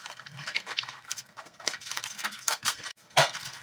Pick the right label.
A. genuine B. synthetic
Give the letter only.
B